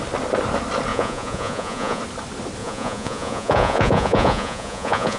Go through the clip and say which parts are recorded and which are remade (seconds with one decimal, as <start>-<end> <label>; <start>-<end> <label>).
0.0-0.9 recorded; 0.9-2.0 remade; 2.0-2.6 recorded; 2.6-5.2 remade